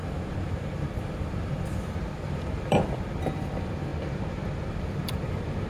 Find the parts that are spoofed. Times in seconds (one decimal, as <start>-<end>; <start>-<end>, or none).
0.0-3.9; 4.7-5.7